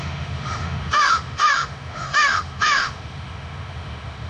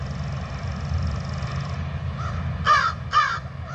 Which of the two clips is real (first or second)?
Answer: second